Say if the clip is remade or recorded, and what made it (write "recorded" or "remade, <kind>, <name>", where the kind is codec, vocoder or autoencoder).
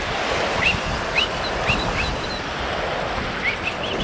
recorded